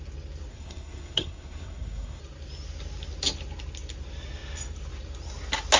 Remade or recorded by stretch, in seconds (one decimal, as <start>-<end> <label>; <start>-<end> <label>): 0.0-0.5 recorded; 0.5-2.2 remade; 2.2-5.8 recorded

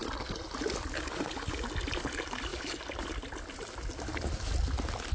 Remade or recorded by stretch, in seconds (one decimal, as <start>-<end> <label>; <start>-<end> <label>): 0.0-5.1 recorded

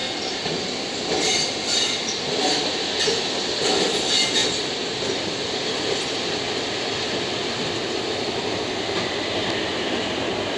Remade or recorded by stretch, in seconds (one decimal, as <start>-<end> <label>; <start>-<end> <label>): 0.0-10.6 recorded

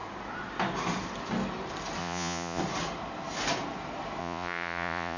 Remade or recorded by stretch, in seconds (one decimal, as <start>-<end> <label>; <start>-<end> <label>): 0.0-2.0 recorded; 2.0-2.6 remade; 2.6-4.2 recorded; 4.2-5.2 remade

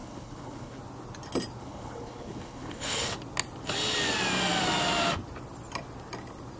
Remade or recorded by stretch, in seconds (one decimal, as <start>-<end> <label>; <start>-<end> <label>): 0.0-0.8 remade; 0.8-1.6 recorded; 1.6-3.1 remade; 3.1-6.6 recorded